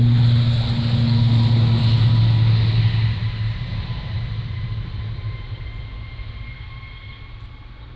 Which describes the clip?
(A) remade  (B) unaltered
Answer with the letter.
B